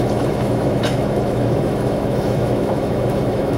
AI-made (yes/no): yes